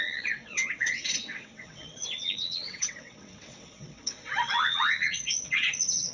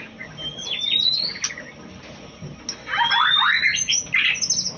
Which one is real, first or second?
second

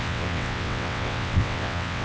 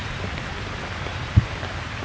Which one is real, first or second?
second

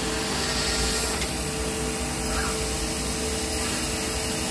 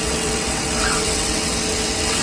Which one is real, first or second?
first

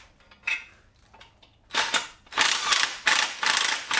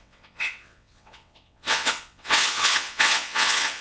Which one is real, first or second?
first